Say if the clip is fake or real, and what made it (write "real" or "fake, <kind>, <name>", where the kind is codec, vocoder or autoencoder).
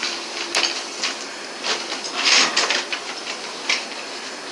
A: real